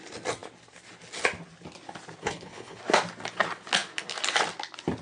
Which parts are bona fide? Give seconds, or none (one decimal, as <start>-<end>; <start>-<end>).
0.0-2.2; 2.8-5.0

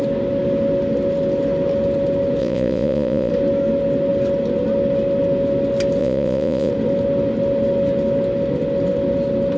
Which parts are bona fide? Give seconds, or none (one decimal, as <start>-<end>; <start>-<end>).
0.0-2.4; 3.3-6.0; 6.7-9.6

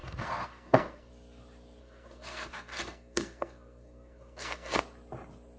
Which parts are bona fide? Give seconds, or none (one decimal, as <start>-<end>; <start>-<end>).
1.1-1.8; 4.8-5.6

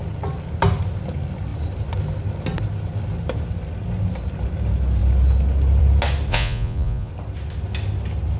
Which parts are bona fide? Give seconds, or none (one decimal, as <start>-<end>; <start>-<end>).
0.0-6.3; 7.1-8.4